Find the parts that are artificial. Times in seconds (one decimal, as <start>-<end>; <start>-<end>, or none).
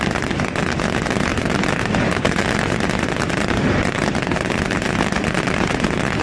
1.3-5.0